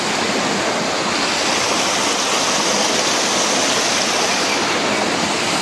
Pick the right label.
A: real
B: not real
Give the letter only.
A